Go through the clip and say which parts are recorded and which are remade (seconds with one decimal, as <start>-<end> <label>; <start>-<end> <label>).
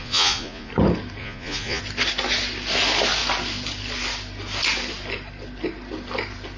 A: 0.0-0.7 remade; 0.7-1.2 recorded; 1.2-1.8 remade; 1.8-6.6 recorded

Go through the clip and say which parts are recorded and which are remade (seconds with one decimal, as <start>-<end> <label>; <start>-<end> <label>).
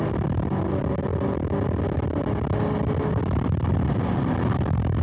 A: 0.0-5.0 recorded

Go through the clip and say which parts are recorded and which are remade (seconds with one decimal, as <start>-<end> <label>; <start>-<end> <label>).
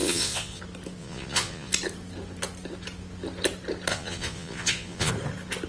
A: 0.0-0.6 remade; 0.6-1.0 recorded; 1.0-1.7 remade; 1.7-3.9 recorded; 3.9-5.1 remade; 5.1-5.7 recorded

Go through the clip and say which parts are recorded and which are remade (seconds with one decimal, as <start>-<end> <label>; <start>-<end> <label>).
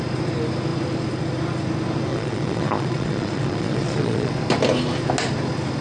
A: 0.0-2.1 recorded; 2.1-4.3 remade; 4.3-5.8 recorded